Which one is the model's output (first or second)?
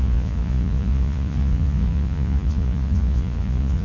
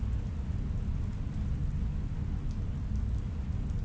first